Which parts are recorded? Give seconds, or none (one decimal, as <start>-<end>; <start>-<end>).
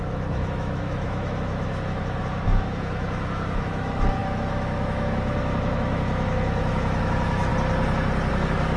7.5-8.3